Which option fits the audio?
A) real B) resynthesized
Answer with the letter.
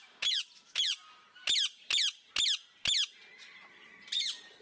A